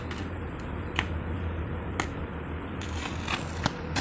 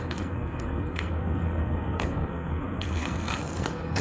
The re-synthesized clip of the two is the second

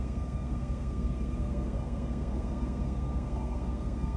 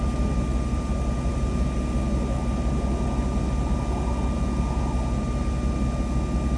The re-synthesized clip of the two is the first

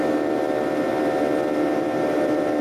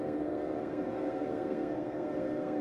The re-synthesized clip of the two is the second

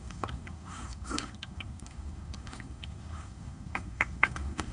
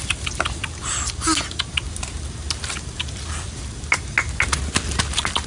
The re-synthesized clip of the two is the first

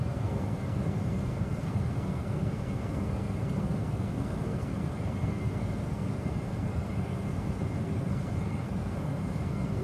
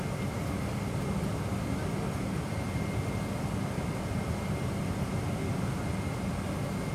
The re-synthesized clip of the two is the first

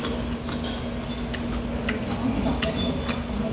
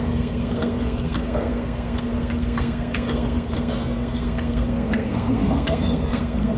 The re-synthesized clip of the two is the second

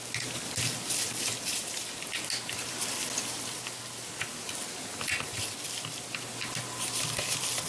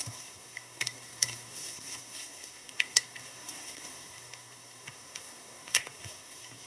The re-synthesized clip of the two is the second